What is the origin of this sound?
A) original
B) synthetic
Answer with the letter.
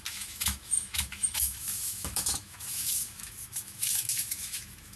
B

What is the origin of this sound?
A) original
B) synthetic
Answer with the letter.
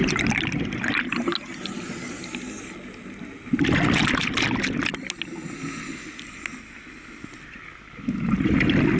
A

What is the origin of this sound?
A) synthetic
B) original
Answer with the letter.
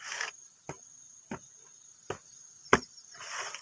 A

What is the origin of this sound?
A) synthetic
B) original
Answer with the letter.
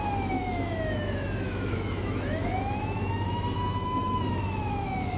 A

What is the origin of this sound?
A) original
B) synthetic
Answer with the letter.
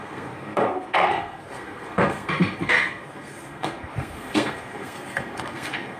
B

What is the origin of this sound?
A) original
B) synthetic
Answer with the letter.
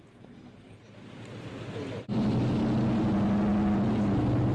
A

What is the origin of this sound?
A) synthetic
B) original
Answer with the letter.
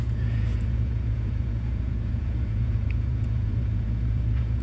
A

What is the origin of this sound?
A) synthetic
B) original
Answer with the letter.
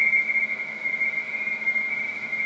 A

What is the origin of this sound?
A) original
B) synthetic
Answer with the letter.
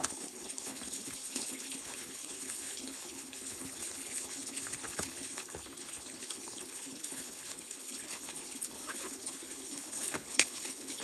B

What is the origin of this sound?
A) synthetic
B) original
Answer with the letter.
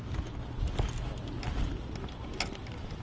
B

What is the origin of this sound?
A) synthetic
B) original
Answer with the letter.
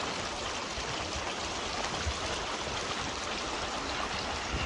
B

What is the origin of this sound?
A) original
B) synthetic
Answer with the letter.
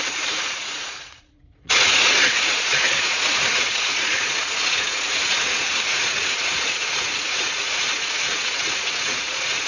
B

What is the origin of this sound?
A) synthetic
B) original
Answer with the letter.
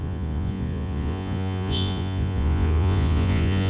A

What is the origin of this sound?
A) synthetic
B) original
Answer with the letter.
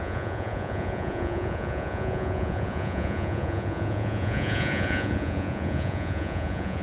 A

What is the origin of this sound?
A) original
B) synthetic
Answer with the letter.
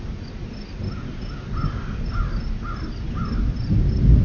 A